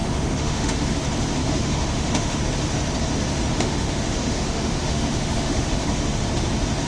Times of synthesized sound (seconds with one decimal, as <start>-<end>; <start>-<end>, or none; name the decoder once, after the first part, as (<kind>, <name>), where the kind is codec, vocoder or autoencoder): 0.0-0.9 (autoencoder, DAC-VAE); 1.4-2.4; 3.5-6.2

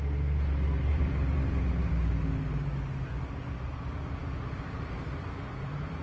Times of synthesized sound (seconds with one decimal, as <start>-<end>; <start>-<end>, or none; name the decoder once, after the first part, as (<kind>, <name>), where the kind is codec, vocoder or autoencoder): 0.9-1.9 (vocoder, BigVGAN v2); 4.2-6.0

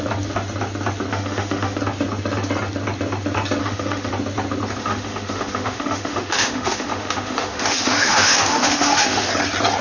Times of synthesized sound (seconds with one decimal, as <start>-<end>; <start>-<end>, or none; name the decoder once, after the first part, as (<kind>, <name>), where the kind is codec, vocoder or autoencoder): 1.1-1.8 (autoencoder, DAC-VAE); 3.6-4.1; 4.8-9.3

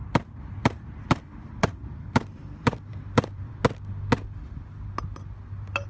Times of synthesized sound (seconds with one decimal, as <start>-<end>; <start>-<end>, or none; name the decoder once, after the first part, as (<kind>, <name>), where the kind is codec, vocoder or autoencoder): 0.0-3.5 (vocoder, BigVGAN v2)

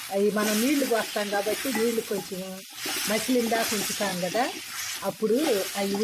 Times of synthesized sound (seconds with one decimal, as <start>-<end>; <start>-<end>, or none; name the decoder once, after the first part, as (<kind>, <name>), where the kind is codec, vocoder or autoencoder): 0.8-2.2 (vocoder, BigVGAN v2)

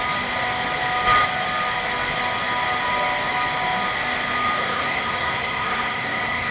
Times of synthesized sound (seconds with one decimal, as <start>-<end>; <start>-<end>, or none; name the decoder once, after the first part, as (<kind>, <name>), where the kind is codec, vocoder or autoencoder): 4.6-6.5 (codec, SNAC)